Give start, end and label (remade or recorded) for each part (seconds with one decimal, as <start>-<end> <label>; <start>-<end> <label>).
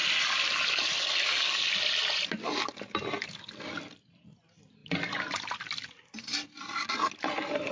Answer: 0.0-7.7 recorded